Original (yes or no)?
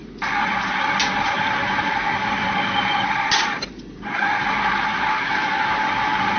yes